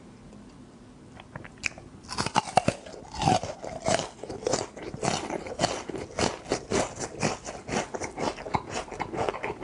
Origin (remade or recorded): recorded